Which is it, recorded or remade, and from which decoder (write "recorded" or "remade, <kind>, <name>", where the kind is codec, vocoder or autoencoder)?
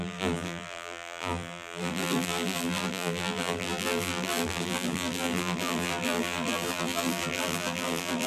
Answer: remade, vocoder, BigVGAN v2